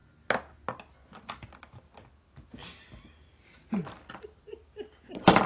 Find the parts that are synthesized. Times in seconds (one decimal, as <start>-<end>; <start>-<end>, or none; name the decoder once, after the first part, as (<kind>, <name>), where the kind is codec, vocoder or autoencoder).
none